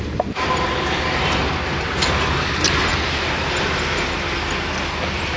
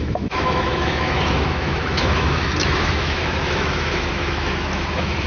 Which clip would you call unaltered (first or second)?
first